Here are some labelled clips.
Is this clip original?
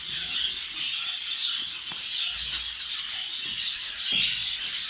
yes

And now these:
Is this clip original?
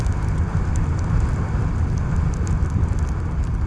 yes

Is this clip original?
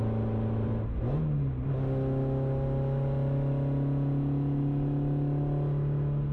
yes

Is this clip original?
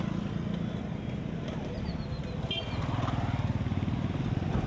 yes